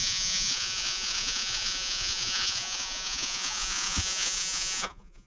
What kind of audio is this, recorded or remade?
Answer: remade